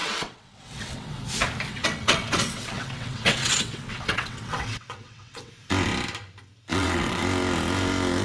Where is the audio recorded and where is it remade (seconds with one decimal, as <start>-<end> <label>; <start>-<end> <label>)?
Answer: 0.0-1.1 remade; 1.1-1.7 recorded; 1.7-5.5 remade; 5.5-6.7 recorded; 6.7-7.2 remade; 7.2-8.2 recorded